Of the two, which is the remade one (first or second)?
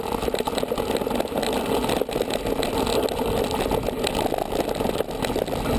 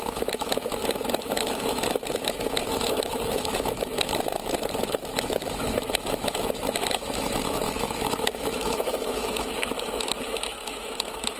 second